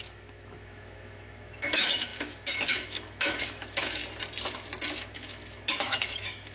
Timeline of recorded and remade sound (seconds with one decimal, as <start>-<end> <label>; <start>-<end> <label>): 0.0-4.0 remade; 4.0-4.9 recorded; 4.9-6.5 remade